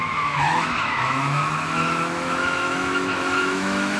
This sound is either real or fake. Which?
fake